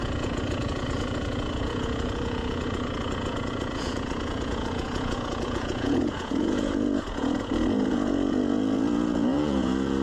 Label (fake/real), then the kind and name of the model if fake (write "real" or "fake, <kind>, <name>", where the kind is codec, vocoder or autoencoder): fake, vocoder, Vocos